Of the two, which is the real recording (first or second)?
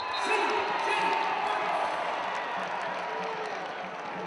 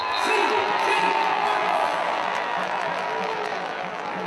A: first